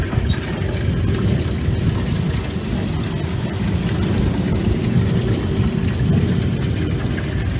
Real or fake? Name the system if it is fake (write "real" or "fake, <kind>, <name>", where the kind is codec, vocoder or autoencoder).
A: real